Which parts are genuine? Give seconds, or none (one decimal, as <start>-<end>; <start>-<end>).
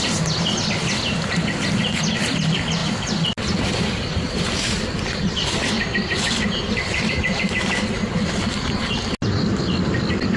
0.0-10.4